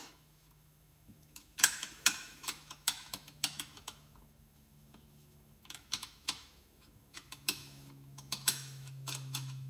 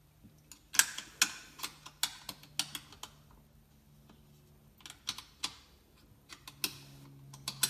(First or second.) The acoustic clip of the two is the second